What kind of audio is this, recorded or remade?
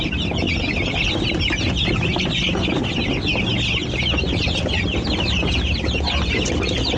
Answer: recorded